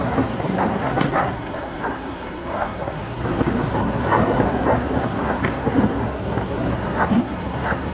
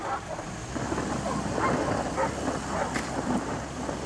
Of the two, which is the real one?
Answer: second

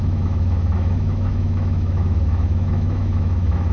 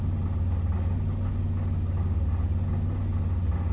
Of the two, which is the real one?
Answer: second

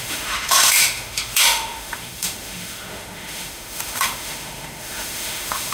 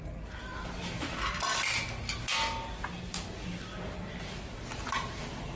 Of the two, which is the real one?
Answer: second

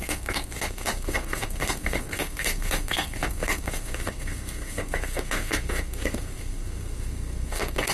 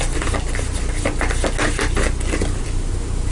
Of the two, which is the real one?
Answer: second